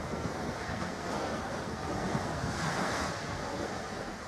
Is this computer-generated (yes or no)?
yes